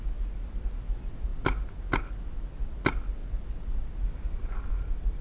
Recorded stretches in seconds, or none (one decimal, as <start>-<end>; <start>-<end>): 0.0-5.2